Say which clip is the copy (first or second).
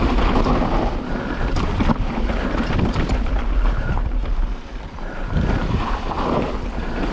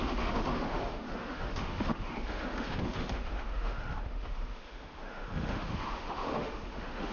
second